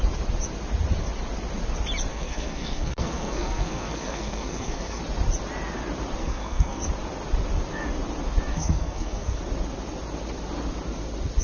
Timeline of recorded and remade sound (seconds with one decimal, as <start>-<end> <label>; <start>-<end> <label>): 0.0-2.1 recorded; 2.1-5.0 remade; 5.0-6.2 recorded; 6.2-6.8 remade; 6.8-8.5 recorded; 8.5-9.4 remade; 9.4-11.4 recorded